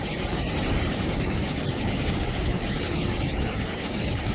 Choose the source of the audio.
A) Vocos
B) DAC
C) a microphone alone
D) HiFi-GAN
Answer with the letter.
B